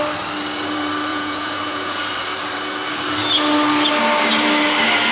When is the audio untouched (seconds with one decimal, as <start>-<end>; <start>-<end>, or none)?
0.0-1.1; 2.0-5.1